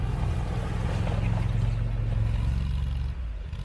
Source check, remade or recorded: recorded